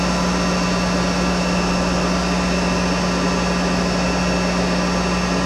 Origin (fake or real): real